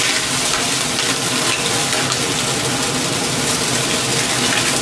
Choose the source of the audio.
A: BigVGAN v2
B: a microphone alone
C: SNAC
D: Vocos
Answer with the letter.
B